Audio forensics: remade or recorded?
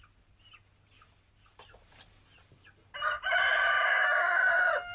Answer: recorded